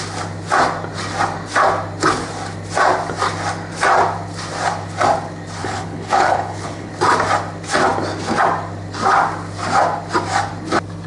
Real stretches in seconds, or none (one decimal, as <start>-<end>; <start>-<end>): 0.0-5.6; 6.9-11.1